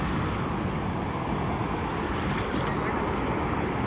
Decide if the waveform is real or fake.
real